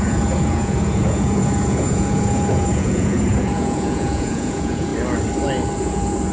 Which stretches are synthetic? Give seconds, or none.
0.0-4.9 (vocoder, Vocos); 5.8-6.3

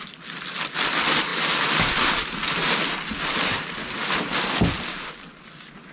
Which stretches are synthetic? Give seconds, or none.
none

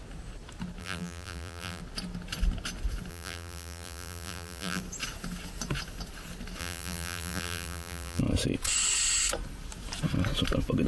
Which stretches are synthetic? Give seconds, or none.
0.8-1.8 (vocoder, BigVGAN v2); 3.1-4.8; 6.6-8.2

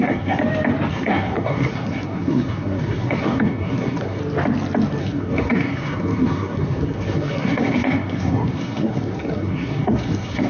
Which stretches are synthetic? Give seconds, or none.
0.0-0.4 (codec, SNAC); 0.9-4.2; 5.0-10.5

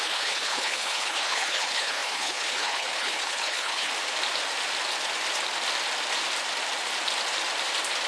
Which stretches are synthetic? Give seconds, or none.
0.0-3.9 (codec, HILCodec)

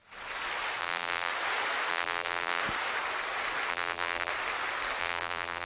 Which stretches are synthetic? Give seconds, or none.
0.8-1.3 (vocoder, BigVGAN v2); 1.9-2.6; 3.7-4.3; 5.0-5.6

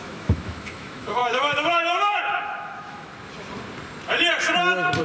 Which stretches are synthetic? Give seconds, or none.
0.0-3.1 (autoencoder, DAC-VAE)

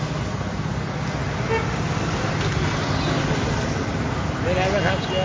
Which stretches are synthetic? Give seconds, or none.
none